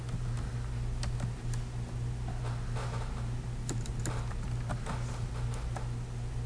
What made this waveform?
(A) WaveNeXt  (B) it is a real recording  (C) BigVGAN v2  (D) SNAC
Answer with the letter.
B